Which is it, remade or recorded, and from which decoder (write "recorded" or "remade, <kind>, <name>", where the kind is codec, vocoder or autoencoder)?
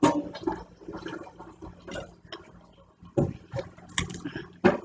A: recorded